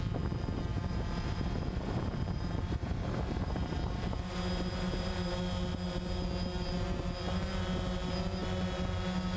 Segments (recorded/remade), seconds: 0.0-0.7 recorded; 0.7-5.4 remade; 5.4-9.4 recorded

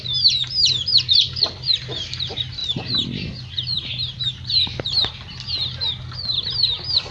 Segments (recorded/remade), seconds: 0.0-7.1 recorded

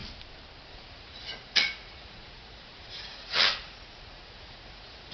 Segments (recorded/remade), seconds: 0.0-0.7 recorded; 0.7-5.1 remade

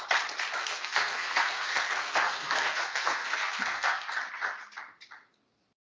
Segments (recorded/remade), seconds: 0.0-0.6 recorded; 0.6-4.1 remade; 4.1-5.8 recorded

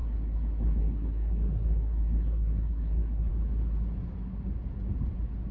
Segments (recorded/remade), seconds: 0.0-3.3 remade; 3.3-5.5 recorded

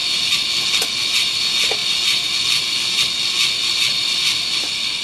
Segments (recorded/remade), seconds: 0.0-0.5 remade; 0.5-5.0 recorded

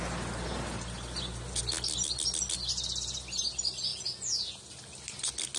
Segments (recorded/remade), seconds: 0.0-3.9 recorded; 3.9-4.6 remade; 4.6-5.6 recorded

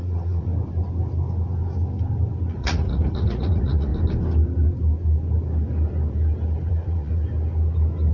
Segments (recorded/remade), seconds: 0.0-0.5 remade; 0.5-2.5 recorded; 2.5-3.9 remade; 3.9-6.7 recorded; 6.7-7.2 remade; 7.2-8.1 recorded